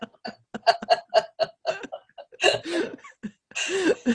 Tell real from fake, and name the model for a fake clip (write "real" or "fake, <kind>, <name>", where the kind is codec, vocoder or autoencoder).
real